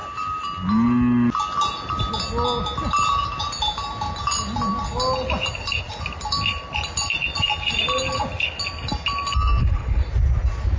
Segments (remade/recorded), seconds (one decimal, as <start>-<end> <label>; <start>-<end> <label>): 0.0-9.6 recorded; 9.6-10.1 remade; 10.1-10.8 recorded